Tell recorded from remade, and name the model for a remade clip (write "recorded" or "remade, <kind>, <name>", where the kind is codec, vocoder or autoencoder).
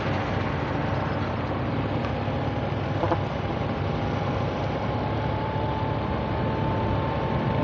recorded